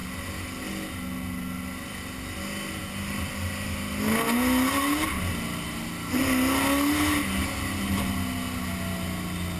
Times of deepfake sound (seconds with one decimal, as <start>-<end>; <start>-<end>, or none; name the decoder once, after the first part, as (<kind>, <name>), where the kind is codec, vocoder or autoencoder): none